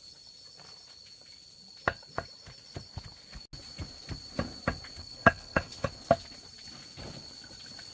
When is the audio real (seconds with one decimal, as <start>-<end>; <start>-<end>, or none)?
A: 0.0-5.0; 5.9-7.9